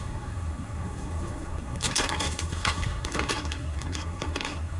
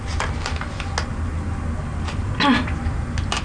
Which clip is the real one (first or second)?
second